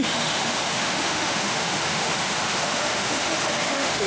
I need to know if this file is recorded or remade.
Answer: remade